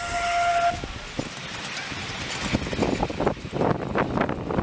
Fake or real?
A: real